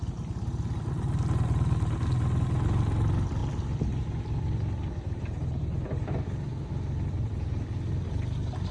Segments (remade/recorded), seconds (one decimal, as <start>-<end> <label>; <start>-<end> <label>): 0.0-8.7 recorded